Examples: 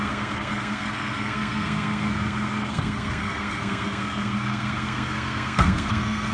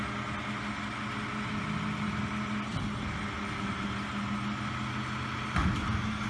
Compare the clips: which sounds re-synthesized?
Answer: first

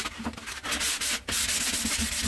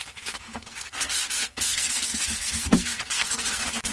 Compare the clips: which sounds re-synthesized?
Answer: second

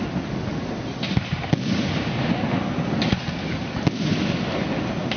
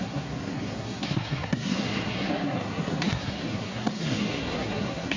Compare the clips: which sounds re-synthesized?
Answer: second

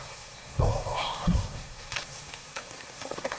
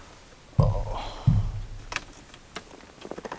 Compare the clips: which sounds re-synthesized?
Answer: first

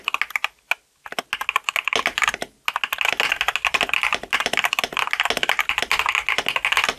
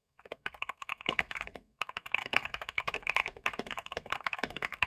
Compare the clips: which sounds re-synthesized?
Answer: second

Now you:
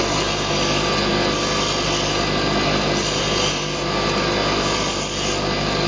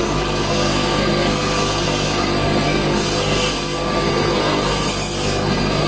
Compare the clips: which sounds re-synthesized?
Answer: second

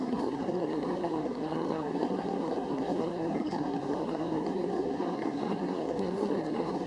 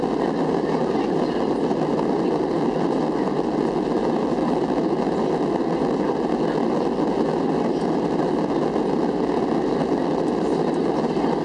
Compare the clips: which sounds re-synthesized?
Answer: first